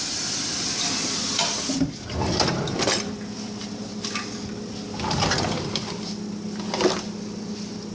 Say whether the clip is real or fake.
real